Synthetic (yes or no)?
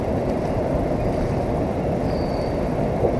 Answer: no